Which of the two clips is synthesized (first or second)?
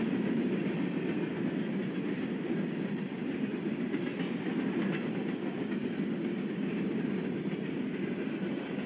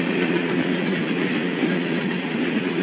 second